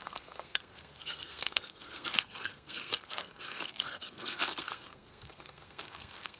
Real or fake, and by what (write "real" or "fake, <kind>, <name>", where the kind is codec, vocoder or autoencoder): fake, codec, SNAC